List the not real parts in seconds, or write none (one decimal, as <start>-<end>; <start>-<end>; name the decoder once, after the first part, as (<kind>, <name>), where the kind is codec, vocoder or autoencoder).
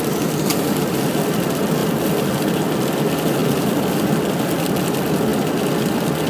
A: 1.8-2.5 (vocoder, BigVGAN v2)